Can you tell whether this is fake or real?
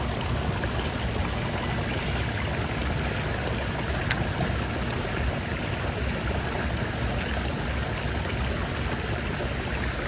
real